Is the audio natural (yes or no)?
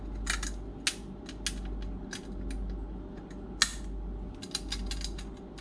yes